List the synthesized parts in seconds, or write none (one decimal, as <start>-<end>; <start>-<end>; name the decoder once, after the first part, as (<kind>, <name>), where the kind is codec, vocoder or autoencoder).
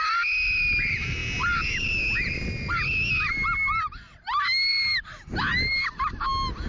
4.7-5.4 (vocoder, BigVGAN v2)